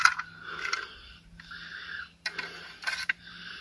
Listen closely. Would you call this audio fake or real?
real